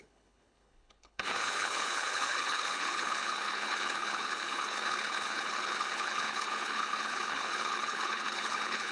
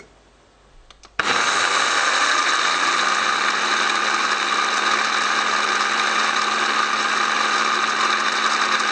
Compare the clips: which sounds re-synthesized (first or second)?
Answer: first